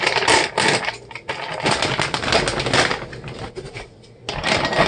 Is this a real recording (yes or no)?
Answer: yes